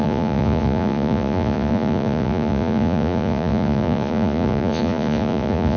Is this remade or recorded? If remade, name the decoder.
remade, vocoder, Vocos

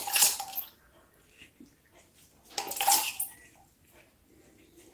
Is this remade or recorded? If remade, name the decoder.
recorded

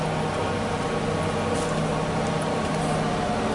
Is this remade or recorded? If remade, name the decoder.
recorded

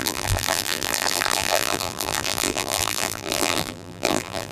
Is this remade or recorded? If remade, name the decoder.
remade, vocoder, BigVGAN v2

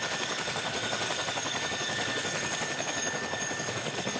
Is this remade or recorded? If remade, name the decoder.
remade, codec, DAC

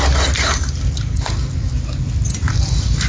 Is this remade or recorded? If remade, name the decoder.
recorded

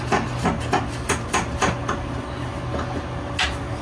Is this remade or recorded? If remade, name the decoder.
recorded